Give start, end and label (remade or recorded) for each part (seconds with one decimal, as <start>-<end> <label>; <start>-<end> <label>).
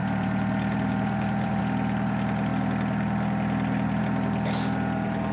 0.0-1.6 remade; 1.6-5.3 recorded